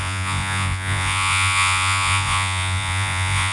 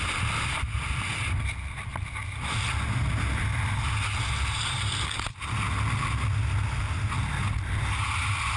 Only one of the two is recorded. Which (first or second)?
second